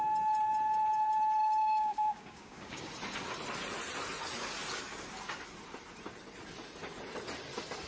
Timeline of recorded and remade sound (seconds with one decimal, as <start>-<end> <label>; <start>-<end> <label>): 0.0-1.6 recorded; 1.6-2.9 remade; 2.9-7.9 recorded